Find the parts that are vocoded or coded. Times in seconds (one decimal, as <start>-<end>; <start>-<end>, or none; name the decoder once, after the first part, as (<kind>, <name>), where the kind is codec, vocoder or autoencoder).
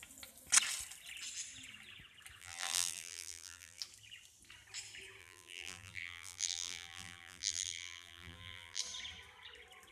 2.4-3.8 (vocoder, BigVGAN v2); 5.2-8.8